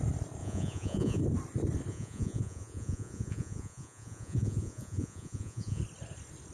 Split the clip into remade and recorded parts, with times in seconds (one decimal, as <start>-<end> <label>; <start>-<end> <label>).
0.0-0.4 recorded; 0.4-1.2 remade; 1.2-1.9 recorded; 1.9-5.8 remade; 5.8-6.5 recorded